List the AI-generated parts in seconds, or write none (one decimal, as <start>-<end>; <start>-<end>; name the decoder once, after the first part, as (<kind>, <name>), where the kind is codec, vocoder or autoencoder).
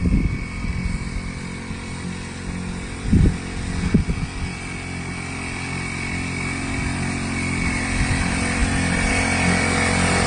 none